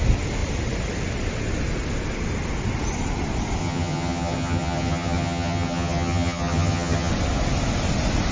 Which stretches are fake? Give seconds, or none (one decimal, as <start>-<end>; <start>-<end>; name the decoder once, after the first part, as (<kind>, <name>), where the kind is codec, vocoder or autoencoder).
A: 3.6-7.1 (vocoder, HiFi-GAN)